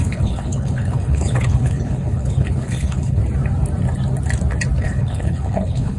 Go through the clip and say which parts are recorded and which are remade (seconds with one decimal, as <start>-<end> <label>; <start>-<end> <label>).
0.0-3.2 remade; 3.2-4.8 recorded; 4.8-6.0 remade